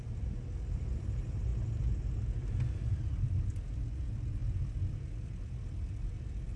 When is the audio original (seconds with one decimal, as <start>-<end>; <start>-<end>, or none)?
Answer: 0.0-6.6